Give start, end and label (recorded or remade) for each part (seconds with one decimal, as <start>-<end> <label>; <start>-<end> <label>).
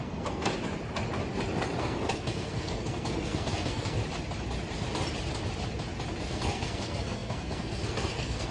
0.0-0.5 remade; 0.5-1.8 recorded; 1.8-4.0 remade; 4.0-6.3 recorded; 6.3-8.5 remade